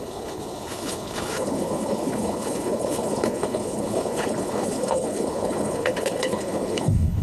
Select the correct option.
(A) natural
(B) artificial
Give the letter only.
B